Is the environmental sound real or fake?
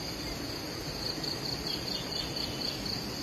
real